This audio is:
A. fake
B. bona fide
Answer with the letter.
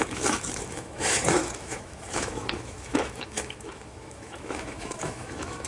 A